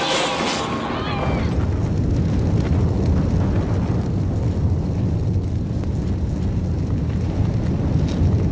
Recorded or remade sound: recorded